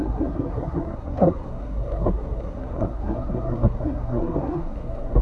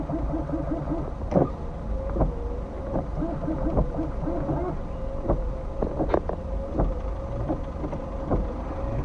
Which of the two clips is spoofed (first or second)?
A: first